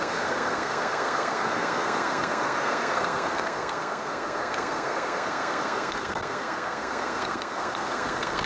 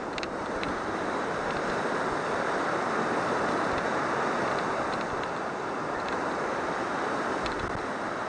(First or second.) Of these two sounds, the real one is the second